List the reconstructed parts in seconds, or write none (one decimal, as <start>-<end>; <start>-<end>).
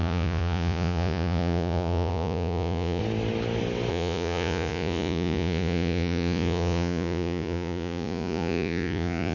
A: 0.0-3.0; 3.9-9.3